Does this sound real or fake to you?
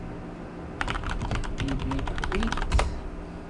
real